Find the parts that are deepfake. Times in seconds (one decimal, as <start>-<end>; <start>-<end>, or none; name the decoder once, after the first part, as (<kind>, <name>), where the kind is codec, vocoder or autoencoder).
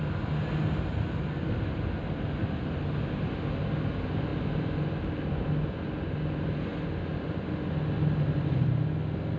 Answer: none